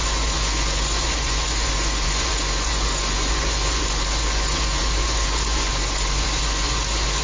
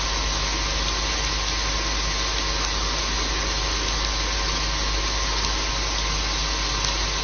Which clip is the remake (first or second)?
first